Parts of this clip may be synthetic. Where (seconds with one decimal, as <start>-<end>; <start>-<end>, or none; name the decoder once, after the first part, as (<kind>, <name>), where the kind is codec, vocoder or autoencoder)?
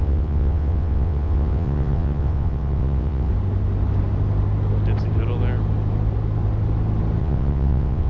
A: 0.0-3.3 (vocoder, WaveNeXt); 7.2-8.1